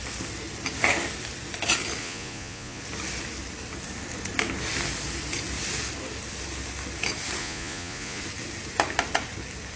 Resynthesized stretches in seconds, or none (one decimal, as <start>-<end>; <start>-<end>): 2.0-2.8; 7.4-8.2